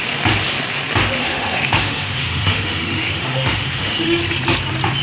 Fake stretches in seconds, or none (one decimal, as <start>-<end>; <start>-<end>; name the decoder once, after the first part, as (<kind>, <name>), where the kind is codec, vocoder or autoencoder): 1.2-4.2 (autoencoder, DAC-VAE)